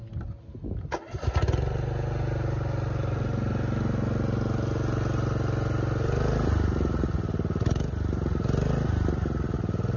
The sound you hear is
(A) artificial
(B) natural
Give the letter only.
B